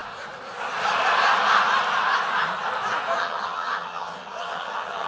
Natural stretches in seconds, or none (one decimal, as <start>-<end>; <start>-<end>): 0.0-3.2